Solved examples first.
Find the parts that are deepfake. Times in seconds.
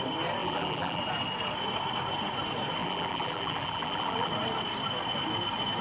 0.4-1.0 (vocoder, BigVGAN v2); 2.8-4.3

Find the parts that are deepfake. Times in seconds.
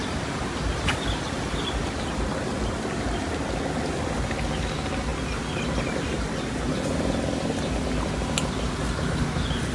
none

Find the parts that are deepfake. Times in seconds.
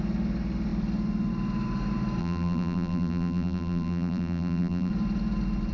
2.2-4.9 (vocoder, BigVGAN v2)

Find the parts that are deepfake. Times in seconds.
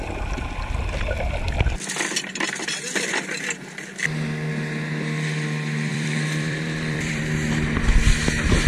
5.9-7.2 (vocoder, BigVGAN v2)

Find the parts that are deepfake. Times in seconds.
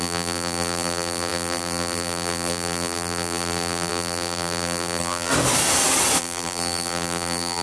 0.0-5.3 (vocoder, BigVGAN v2); 6.2-7.6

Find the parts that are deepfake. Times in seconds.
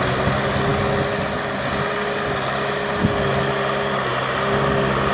none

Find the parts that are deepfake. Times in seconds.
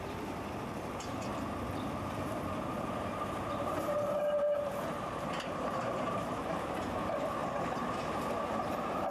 0.0-1.3 (vocoder, BigVGAN v2); 2.0-9.1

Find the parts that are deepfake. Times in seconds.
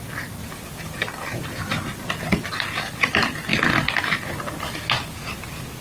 none